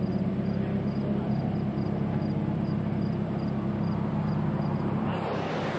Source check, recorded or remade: recorded